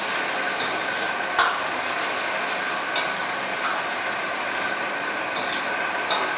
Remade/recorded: recorded